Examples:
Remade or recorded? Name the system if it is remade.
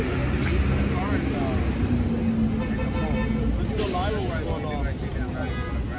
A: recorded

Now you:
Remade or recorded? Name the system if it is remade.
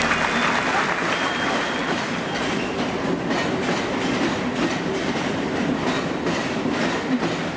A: recorded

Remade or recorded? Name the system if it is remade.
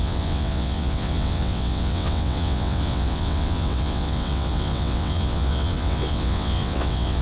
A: remade, vocoder, WaveNeXt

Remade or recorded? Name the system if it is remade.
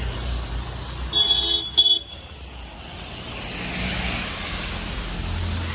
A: recorded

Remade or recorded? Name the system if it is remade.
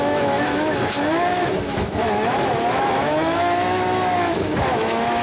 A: remade, autoencoder, DAC-VAE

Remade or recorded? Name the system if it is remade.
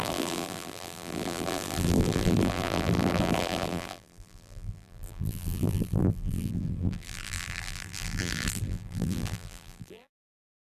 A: remade, vocoder, BigVGAN v2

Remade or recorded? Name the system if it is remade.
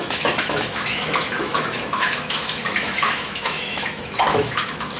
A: remade, autoencoder, DAC-VAE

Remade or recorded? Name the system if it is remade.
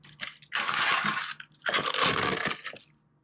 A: recorded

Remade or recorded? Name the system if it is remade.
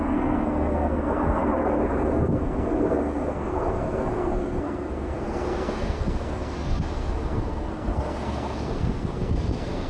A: remade, codec, SNAC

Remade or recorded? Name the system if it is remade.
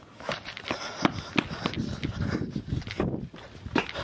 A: recorded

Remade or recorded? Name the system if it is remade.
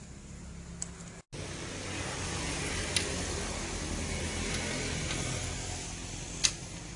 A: recorded